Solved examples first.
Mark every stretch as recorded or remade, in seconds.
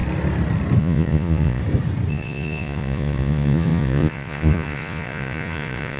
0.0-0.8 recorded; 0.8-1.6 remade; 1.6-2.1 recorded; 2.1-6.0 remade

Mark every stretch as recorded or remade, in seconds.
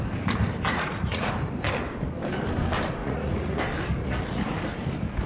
0.0-0.7 recorded; 0.7-1.3 remade; 1.3-3.0 recorded; 3.0-3.6 remade; 3.6-4.0 recorded; 4.0-4.6 remade; 4.6-5.3 recorded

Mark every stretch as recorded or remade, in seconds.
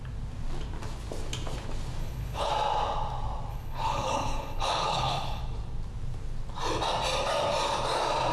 0.0-2.0 recorded; 2.0-2.5 remade; 2.5-3.5 recorded; 3.5-5.4 remade; 5.4-8.3 recorded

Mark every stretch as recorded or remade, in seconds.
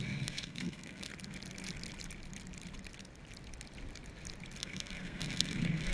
0.0-1.1 remade; 1.1-4.6 recorded; 4.6-5.9 remade